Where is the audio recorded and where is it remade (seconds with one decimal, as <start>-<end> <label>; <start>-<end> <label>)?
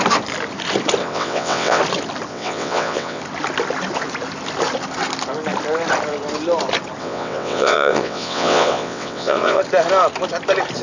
0.0-1.0 recorded; 1.0-1.8 remade; 1.8-2.3 recorded; 2.3-3.2 remade; 3.2-7.0 recorded; 7.0-9.6 remade; 9.6-10.8 recorded